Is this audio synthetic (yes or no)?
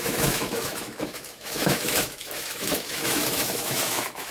yes